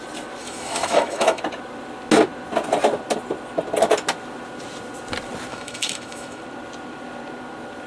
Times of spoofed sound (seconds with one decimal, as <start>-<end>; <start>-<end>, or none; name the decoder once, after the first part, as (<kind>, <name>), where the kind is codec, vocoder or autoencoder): 0.4-1.4 (autoencoder, DAC-VAE); 5.5-6.4

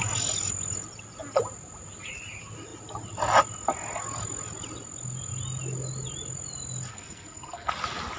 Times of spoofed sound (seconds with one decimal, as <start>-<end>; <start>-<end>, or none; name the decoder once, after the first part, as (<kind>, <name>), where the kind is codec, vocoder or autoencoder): 6.9-7.7 (codec, SNAC)

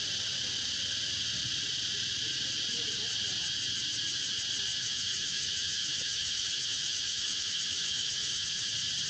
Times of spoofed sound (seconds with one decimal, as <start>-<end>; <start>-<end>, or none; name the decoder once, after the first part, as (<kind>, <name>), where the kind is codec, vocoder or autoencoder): 4.8-8.7 (autoencoder, DAC-VAE)